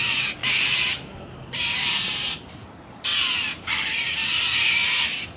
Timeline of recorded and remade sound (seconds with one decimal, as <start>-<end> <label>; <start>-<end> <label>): 0.0-5.4 recorded

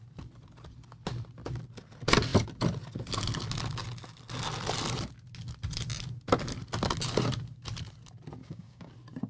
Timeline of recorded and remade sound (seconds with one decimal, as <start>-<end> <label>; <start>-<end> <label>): 0.0-8.4 recorded; 8.4-8.9 remade; 8.9-9.3 recorded

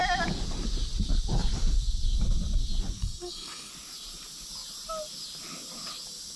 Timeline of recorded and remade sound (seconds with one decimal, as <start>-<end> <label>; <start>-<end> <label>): 0.0-3.0 recorded; 3.0-3.7 remade; 3.7-6.4 recorded

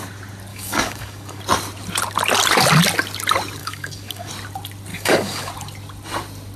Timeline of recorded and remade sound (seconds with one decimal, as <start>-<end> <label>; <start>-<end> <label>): 0.0-0.5 recorded; 0.5-1.4 remade; 1.4-3.6 recorded; 3.6-4.3 remade; 4.3-4.9 recorded; 4.9-5.5 remade; 5.5-6.6 recorded

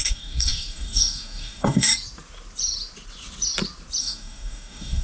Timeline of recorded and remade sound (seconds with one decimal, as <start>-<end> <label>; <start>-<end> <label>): 0.0-1.9 remade; 1.9-4.0 recorded; 4.0-5.0 remade

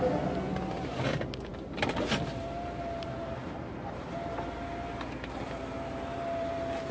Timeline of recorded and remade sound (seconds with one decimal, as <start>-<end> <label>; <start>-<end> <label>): 0.0-6.9 recorded

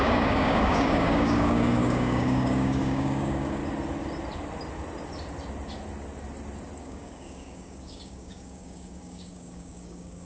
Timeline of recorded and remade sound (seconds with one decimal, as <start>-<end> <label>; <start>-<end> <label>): 0.0-3.6 remade; 3.6-6.8 recorded; 6.8-10.3 remade